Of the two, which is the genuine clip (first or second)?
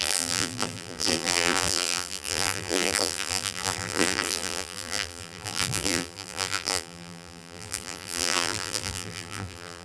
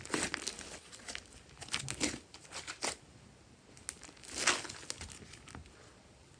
second